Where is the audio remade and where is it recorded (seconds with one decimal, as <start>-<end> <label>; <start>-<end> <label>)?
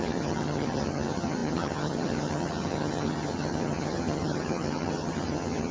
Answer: 0.0-5.7 remade